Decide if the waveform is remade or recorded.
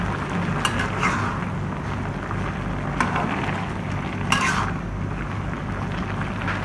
recorded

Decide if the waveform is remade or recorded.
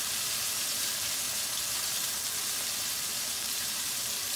remade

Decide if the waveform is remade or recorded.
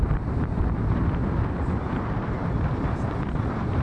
remade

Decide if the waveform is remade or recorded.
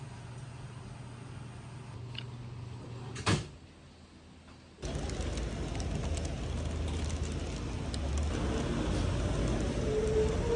recorded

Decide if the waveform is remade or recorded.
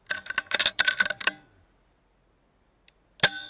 recorded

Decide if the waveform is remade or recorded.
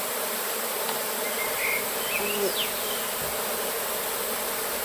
recorded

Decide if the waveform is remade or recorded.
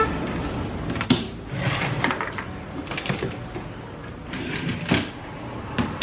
recorded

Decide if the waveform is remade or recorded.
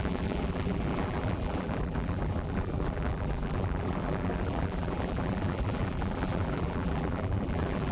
remade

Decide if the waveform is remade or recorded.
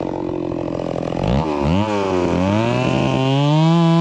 recorded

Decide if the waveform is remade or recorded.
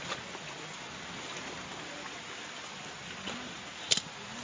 recorded